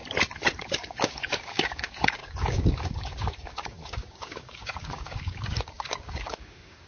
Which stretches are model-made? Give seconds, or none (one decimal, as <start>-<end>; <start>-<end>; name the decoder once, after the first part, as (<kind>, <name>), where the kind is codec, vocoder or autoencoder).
0.6-6.9 (codec, DAC)